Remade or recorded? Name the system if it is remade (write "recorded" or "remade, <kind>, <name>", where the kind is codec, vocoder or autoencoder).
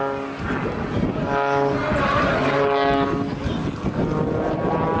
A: recorded